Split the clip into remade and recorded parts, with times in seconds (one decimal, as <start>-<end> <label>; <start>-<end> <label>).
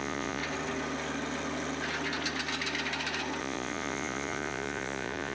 0.0-0.4 remade; 0.4-3.4 recorded; 3.4-5.3 remade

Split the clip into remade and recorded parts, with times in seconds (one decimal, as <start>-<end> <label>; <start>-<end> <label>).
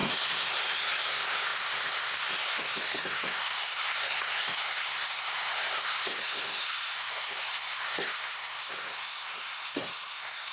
0.0-10.5 remade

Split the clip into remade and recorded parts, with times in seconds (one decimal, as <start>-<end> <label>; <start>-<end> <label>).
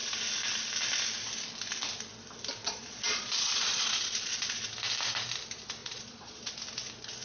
0.0-2.6 recorded; 2.6-4.7 remade; 4.7-5.8 recorded; 5.8-6.6 remade; 6.6-7.2 recorded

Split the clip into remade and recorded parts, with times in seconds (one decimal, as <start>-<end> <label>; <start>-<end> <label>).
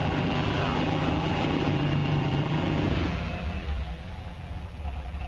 0.0-5.3 remade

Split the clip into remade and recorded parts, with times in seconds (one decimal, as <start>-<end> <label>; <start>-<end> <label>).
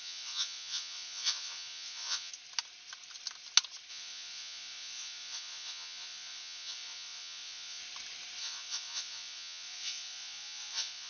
0.0-2.3 remade; 2.3-3.9 recorded; 3.9-7.8 remade; 7.8-8.4 recorded; 8.4-11.1 remade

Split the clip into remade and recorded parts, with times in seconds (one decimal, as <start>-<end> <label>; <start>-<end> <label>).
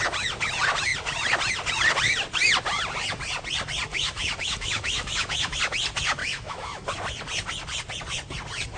0.0-3.9 recorded; 3.9-5.6 remade; 5.6-6.2 recorded; 6.2-6.9 remade; 6.9-8.8 recorded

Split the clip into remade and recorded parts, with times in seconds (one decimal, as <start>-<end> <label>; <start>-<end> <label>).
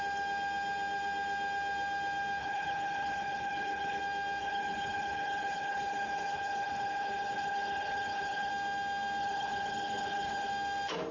0.0-2.4 recorded; 2.4-4.0 remade; 4.0-4.4 recorded; 4.4-8.5 remade; 8.5-9.2 recorded; 9.2-10.5 remade; 10.5-11.1 recorded